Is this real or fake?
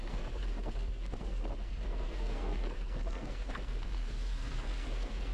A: fake